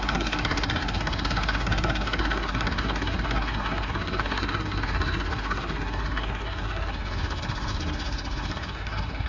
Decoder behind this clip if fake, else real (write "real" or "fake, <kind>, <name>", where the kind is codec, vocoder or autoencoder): fake, codec, SNAC